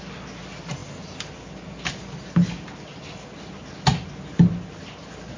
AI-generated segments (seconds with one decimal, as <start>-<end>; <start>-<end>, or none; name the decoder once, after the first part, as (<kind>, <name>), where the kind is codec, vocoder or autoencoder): none